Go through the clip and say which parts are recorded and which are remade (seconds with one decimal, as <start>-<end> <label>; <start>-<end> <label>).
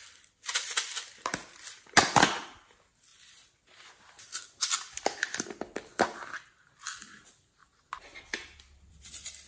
0.0-3.1 recorded; 3.1-4.4 remade; 4.4-5.3 recorded; 5.3-6.2 remade; 6.2-9.5 recorded